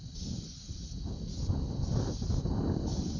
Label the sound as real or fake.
real